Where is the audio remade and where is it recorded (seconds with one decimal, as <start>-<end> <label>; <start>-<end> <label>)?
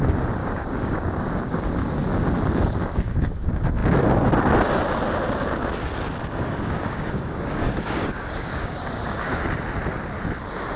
0.0-0.4 recorded; 0.4-2.2 remade; 2.2-2.8 recorded; 2.8-3.3 remade; 3.3-6.2 recorded; 6.2-9.4 remade; 9.4-10.8 recorded